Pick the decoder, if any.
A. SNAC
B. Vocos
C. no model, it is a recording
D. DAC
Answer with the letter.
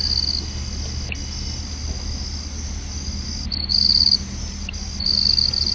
C